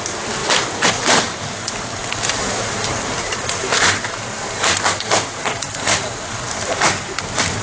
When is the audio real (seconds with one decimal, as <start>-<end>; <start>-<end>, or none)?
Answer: 0.0-2.0; 6.6-7.6